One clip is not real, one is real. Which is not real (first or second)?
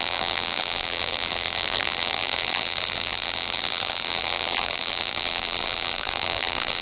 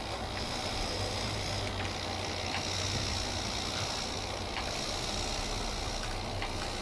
first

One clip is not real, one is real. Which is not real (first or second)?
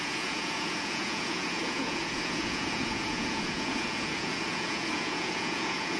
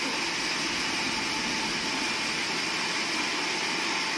first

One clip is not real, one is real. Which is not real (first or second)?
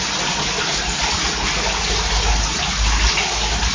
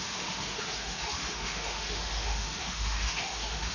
second